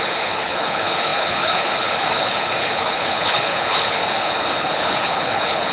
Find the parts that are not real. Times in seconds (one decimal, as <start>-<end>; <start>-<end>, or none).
0.0-5.7